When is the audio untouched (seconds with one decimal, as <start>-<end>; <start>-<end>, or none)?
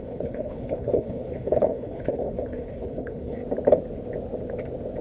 3.4-5.0